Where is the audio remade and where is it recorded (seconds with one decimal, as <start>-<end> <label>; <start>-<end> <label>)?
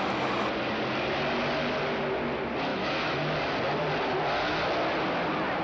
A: 0.0-2.7 recorded; 2.7-3.4 remade; 3.4-5.6 recorded